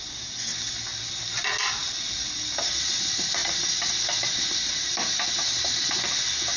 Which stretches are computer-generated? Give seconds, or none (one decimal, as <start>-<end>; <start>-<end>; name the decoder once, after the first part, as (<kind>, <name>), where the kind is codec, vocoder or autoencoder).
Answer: 3.4-6.0 (vocoder, BigVGAN v2)